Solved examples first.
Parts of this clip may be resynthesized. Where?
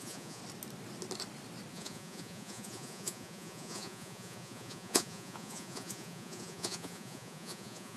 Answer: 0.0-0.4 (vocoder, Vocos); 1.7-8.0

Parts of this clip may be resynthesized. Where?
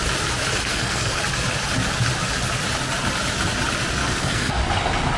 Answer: 0.7-1.2 (codec, SNAC); 4.0-4.6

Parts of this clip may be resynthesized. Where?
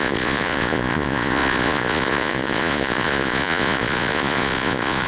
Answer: 0.0-5.1 (vocoder, Vocos)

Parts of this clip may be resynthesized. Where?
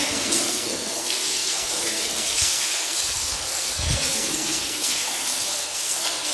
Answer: 0.0-6.3 (codec, SNAC)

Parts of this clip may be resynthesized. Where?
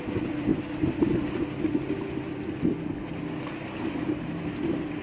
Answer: none